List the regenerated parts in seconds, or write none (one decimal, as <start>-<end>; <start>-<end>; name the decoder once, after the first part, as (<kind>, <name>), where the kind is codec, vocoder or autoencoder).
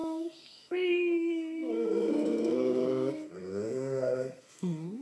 0.0-5.0 (codec, SNAC)